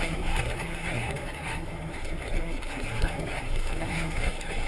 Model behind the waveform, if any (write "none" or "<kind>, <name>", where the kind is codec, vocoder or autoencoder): codec, SNAC